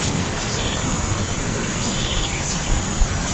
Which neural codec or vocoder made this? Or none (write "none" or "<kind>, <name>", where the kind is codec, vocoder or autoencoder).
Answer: codec, SNAC